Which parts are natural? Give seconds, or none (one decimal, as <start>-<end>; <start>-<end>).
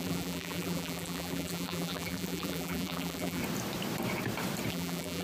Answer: 3.4-4.7